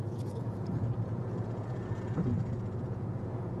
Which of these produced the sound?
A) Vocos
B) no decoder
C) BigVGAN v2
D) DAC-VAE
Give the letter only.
A